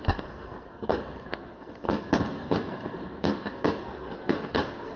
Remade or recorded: remade